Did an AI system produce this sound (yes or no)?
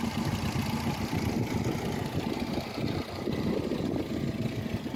no